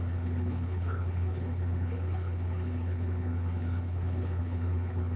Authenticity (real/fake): fake